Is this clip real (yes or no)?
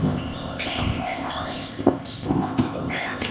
no